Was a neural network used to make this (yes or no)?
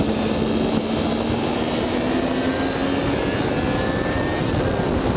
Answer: no